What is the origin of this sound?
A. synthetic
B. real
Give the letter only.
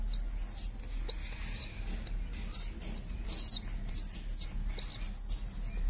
B